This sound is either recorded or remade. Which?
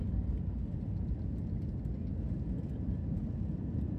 recorded